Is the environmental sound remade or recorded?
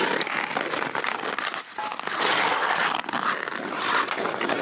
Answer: recorded